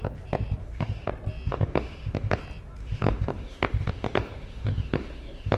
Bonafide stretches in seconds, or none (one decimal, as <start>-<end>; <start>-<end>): 0.0-0.6; 1.1-1.5; 2.4-2.8